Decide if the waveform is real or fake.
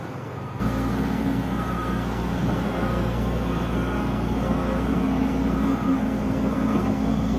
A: fake